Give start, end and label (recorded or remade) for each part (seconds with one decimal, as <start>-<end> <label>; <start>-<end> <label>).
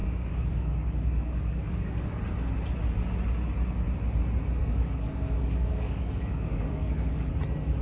0.0-2.1 remade; 2.1-4.6 recorded; 4.6-7.3 remade; 7.3-7.8 recorded